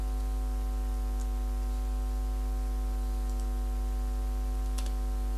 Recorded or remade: recorded